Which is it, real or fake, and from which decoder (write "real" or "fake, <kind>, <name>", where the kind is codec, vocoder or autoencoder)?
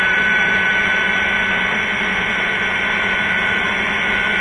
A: fake, vocoder, Vocos